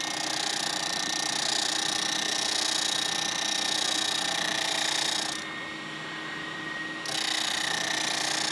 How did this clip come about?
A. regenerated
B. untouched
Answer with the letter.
B